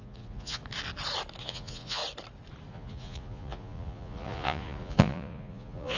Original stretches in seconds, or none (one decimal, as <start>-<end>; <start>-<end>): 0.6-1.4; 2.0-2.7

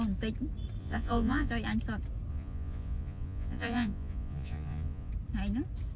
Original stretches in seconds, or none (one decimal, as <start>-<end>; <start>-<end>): 0.0-0.8; 1.5-2.3; 5.1-6.0

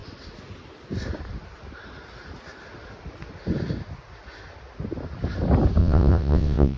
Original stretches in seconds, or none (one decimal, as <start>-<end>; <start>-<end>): 0.0-5.8

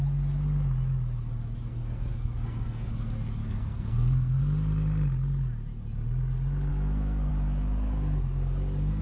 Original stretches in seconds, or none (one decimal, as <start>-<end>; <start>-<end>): 0.0-1.7; 2.9-3.4; 4.4-6.7; 7.3-9.0

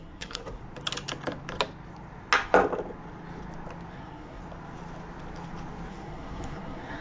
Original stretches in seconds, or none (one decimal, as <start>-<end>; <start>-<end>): 0.6-3.9; 4.4-5.9

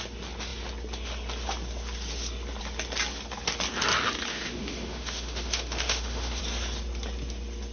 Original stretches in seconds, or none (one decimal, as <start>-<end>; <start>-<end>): 0.0-4.3; 6.4-7.7

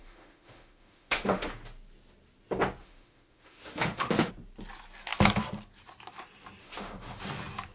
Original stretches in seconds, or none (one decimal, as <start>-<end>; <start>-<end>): 1.6-2.8; 4.3-6.6; 7.2-7.7

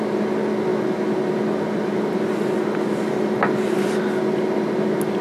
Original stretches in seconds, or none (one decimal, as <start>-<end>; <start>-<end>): 0.0-5.2